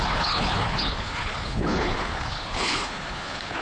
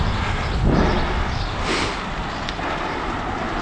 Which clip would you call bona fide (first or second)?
second